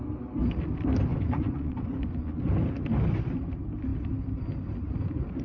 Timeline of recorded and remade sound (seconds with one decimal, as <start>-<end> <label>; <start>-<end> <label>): 0.0-1.1 recorded; 1.1-2.5 remade; 2.5-5.4 recorded